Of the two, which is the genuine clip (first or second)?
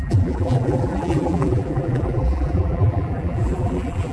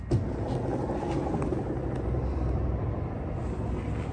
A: second